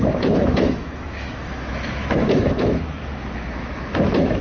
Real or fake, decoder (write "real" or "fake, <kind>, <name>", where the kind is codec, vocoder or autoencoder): fake, autoencoder, DAC-VAE